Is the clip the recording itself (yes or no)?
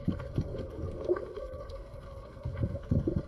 no